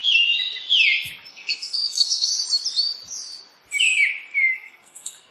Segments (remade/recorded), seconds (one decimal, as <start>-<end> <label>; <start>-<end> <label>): 0.0-1.3 recorded; 1.3-2.3 remade; 2.3-4.5 recorded; 4.5-5.3 remade